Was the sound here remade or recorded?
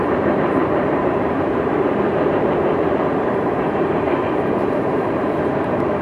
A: remade